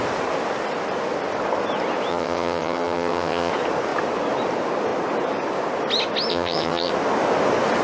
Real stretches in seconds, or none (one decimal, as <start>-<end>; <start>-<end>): 0.0-2.1; 3.5-6.3; 6.9-7.8

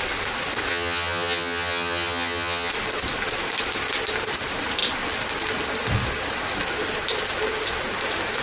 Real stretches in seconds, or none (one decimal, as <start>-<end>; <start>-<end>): 0.0-0.7; 2.7-8.4